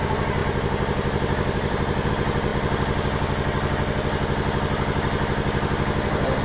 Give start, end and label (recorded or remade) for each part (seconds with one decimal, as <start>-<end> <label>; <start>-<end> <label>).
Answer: 0.0-0.4 recorded; 0.4-2.1 remade; 2.1-6.4 recorded